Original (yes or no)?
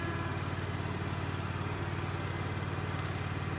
yes